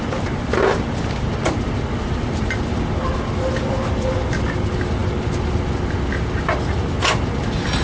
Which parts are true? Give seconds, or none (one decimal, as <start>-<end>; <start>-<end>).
0.0-7.8